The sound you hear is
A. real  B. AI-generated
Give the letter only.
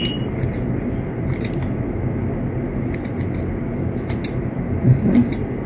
A